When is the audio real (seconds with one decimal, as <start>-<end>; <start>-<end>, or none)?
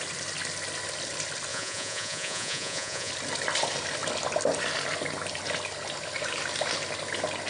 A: 0.0-1.5; 3.1-7.5